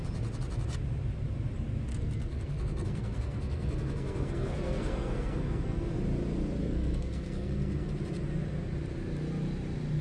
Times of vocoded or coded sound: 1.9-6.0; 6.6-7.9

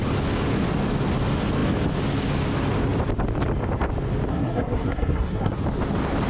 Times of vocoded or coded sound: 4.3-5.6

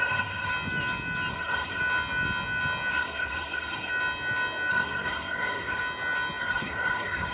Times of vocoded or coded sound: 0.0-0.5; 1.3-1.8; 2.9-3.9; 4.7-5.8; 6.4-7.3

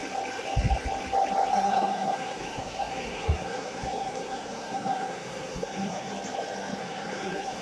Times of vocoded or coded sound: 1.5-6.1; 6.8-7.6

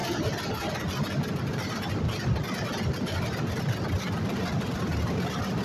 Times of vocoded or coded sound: none